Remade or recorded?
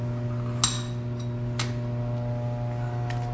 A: recorded